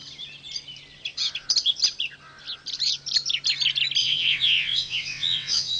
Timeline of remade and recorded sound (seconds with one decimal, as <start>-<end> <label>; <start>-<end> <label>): 0.0-4.0 recorded; 4.0-5.8 remade